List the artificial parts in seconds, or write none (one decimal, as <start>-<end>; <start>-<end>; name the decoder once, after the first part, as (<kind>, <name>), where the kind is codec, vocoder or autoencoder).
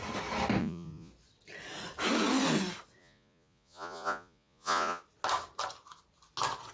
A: 0.6-1.1 (vocoder, Vocos); 3.0-5.0